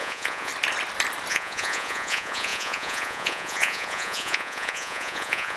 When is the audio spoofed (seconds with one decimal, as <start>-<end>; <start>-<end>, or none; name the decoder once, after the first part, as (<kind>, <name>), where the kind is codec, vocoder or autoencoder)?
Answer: 0.0-0.5 (vocoder, Vocos); 1.3-5.6